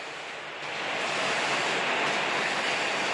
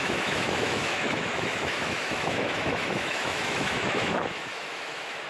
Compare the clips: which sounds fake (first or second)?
second